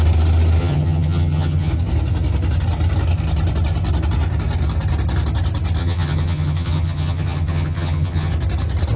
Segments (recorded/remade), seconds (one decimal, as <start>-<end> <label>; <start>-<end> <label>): 0.0-0.6 recorded; 0.6-1.7 remade; 1.7-5.8 recorded; 5.8-8.3 remade; 8.3-9.0 recorded